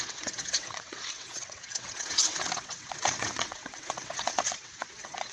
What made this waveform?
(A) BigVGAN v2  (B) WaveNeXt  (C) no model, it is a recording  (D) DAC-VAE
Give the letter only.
B